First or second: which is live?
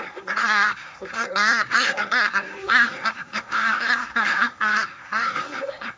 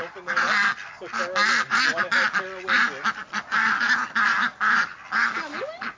second